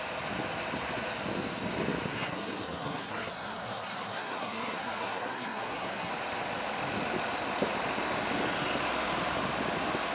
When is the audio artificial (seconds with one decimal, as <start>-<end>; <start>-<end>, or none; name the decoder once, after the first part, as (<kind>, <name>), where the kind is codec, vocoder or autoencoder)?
2.1-6.1 (codec, SNAC)